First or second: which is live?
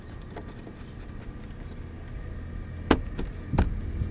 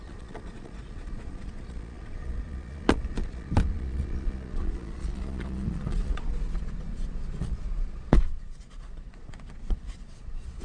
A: first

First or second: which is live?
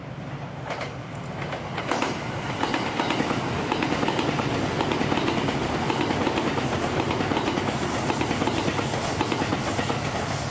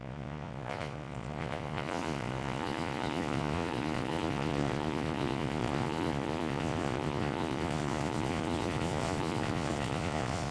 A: first